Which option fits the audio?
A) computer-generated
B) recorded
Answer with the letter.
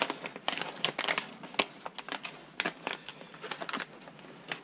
B